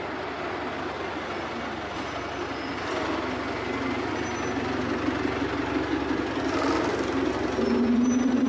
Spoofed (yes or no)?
no